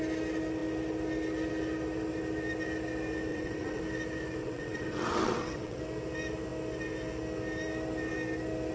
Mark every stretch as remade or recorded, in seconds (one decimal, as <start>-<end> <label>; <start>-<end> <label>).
0.0-3.3 recorded; 3.3-3.8 remade; 3.8-4.4 recorded; 4.4-5.8 remade; 5.8-8.7 recorded